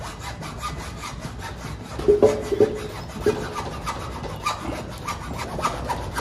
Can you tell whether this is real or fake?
real